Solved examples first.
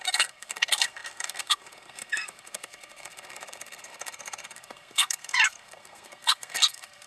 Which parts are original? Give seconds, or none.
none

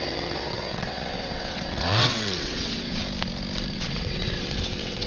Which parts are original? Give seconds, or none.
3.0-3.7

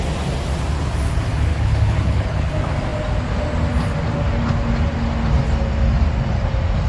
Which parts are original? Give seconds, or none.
0.0-1.5; 2.5-6.9

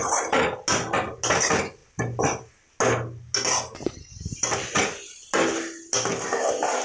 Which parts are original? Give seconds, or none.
0.0-6.8